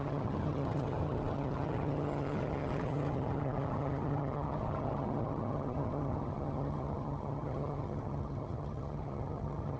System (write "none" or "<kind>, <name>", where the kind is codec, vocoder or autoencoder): vocoder, HiFi-GAN